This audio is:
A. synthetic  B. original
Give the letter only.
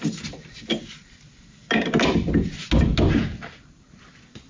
B